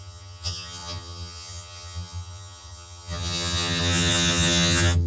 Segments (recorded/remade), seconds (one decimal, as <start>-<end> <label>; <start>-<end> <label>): 0.0-5.1 remade

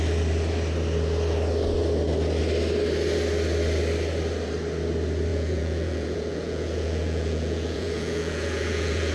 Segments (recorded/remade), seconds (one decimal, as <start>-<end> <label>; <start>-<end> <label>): 0.0-5.3 recorded; 5.3-9.1 remade

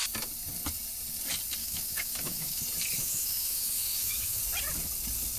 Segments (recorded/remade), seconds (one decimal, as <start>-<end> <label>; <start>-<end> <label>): 0.0-1.6 recorded; 1.6-2.6 remade; 2.6-3.0 recorded; 3.0-4.4 remade; 4.4-5.4 recorded

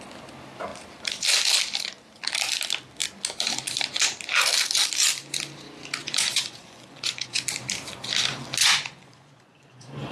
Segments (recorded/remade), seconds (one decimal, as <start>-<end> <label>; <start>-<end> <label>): 0.0-6.0 recorded; 6.0-7.4 remade; 7.4-8.6 recorded; 8.6-10.1 remade

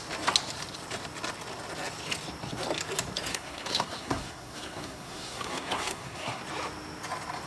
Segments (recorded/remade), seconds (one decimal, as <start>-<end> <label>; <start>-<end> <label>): 0.0-3.3 recorded; 3.3-6.4 remade; 6.4-7.5 recorded

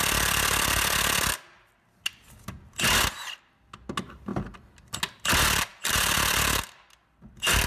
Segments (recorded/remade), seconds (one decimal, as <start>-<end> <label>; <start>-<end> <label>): 0.0-7.7 recorded